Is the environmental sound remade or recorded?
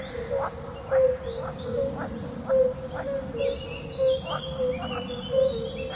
recorded